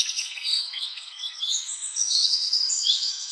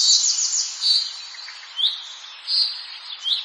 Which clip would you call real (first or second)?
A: second